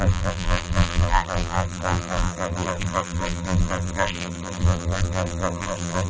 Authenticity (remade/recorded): remade